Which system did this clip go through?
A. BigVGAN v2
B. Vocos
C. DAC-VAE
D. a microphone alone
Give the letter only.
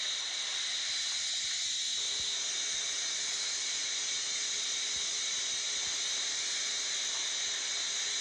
D